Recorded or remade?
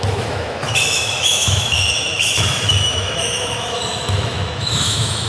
remade